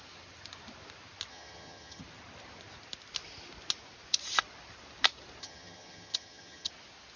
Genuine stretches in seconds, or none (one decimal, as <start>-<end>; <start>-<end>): 0.0-1.3; 2.0-5.4; 6.7-7.2